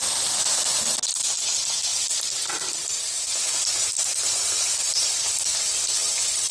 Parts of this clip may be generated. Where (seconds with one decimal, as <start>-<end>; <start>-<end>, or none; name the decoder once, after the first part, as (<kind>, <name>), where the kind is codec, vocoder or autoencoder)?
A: 0.0-1.9 (vocoder, BigVGAN v2); 2.8-6.5